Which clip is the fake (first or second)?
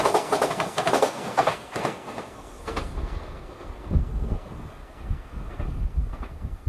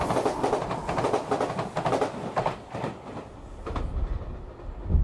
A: first